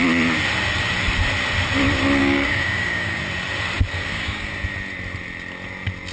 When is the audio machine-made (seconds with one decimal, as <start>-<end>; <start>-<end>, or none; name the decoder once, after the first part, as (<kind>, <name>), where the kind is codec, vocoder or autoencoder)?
2.2-3.2 (codec, DAC); 4.0-4.5